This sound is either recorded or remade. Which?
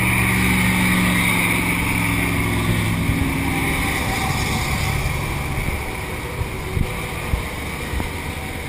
recorded